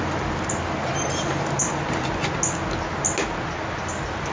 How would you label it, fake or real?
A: real